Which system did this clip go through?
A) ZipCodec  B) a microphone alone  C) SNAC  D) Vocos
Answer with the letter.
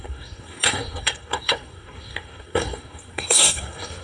C